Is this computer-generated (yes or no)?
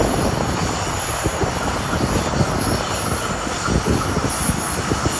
no